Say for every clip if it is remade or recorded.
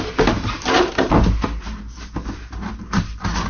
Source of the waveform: recorded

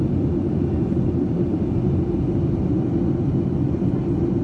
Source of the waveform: recorded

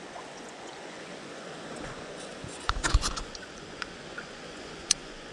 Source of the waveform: remade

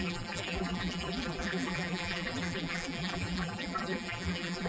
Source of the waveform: remade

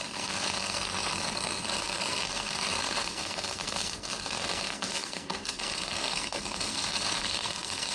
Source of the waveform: remade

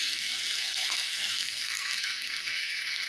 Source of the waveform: remade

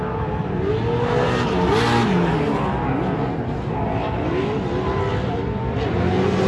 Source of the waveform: recorded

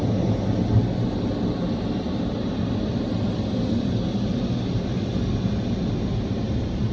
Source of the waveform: recorded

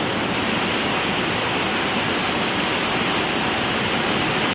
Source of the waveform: recorded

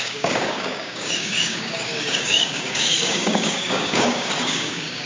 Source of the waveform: remade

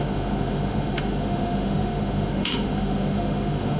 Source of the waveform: remade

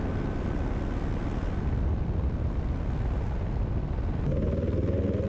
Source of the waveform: recorded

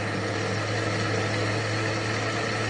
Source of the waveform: recorded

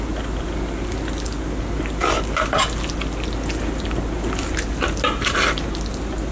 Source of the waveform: recorded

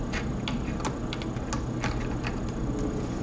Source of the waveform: recorded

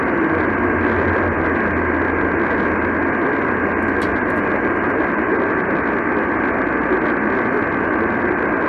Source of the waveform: recorded